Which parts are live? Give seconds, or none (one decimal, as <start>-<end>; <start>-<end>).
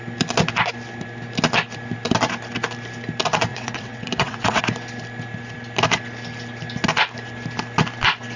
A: 0.0-3.5; 4.6-8.4